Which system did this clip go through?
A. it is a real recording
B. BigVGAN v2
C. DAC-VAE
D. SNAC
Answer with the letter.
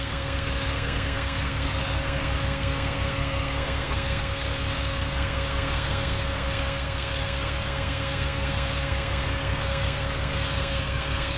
D